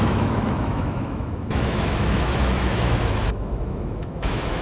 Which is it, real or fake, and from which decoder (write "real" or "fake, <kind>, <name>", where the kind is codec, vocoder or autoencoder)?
fake, autoencoder, DAC-VAE